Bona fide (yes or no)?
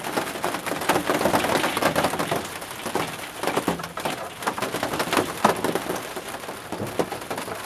no